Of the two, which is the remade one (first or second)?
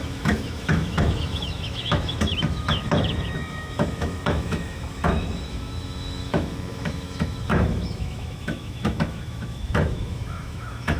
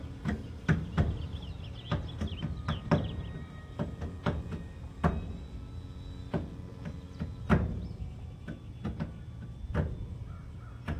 first